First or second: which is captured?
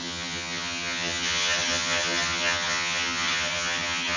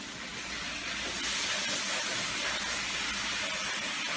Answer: second